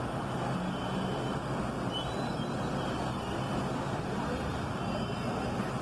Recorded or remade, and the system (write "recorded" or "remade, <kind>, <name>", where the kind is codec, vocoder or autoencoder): recorded